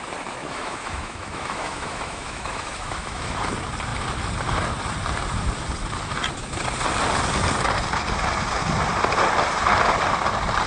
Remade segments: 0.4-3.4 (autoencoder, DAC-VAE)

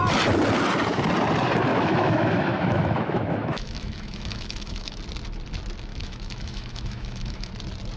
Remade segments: 1.7-5.0 (autoencoder, DAC-VAE); 5.9-7.5

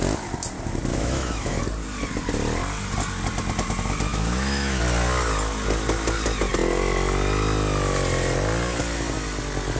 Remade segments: 0.9-1.6 (autoencoder, DAC-VAE); 4.1-4.8

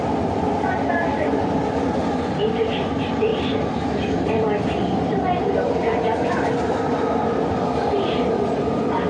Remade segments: none

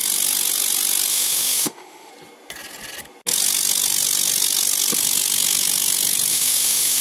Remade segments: 1.1-2.1 (autoencoder, DAC-VAE); 6.3-7.0

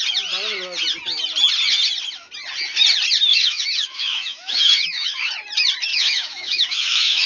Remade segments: 3.3-5.3 (autoencoder, DAC-VAE); 5.9-7.3